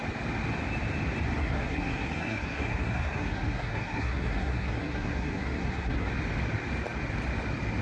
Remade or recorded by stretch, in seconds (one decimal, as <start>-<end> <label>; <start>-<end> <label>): 0.0-1.4 recorded; 1.4-6.1 remade; 6.1-7.8 recorded